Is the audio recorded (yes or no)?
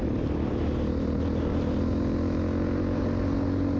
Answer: yes